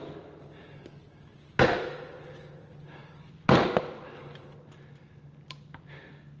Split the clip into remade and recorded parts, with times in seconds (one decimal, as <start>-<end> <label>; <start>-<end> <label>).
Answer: 0.0-6.4 recorded